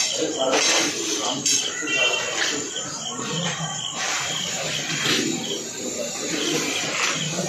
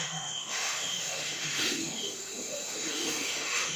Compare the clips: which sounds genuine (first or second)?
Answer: first